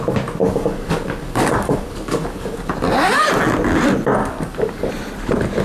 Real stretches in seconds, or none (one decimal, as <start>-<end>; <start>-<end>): 0.0-0.4; 2.7-4.2; 4.9-5.6